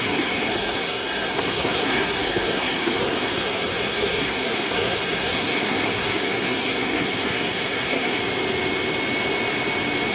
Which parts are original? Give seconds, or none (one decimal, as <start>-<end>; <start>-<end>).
8.2-10.1